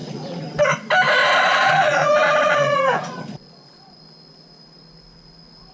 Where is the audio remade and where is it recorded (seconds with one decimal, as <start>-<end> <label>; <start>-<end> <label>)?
0.0-0.6 remade; 0.6-1.5 recorded; 1.5-4.0 remade; 4.0-5.7 recorded